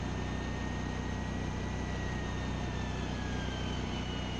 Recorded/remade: recorded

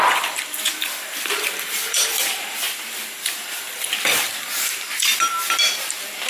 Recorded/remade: remade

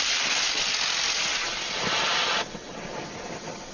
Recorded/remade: remade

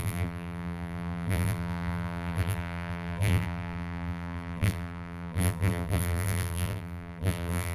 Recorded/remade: remade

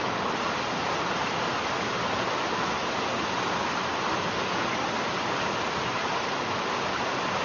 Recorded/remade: recorded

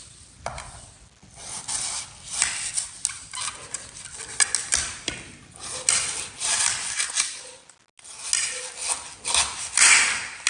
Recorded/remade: recorded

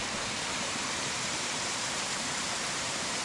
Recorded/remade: remade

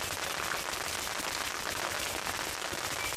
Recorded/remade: recorded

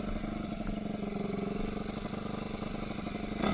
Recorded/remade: recorded